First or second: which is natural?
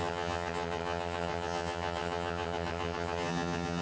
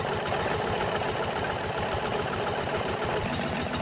second